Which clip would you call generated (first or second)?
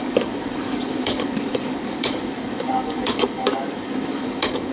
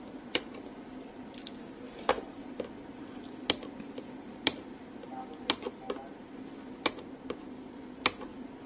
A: first